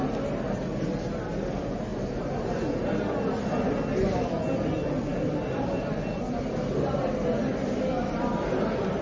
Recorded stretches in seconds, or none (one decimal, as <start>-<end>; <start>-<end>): 0.0-7.5; 8.2-9.0